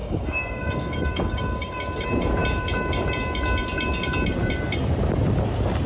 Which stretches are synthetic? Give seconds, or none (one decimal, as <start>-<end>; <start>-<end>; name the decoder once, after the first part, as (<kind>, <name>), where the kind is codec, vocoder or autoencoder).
0.0-1.8 (codec, DAC)